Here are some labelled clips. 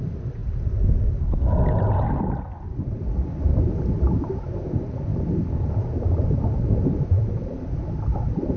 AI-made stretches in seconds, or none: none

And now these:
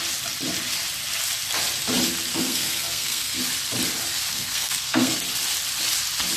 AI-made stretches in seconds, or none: 2.3-3.4 (codec, SNAC); 4.3-5.2